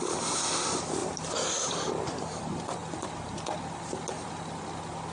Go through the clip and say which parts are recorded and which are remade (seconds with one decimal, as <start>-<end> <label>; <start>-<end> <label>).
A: 0.0-5.1 recorded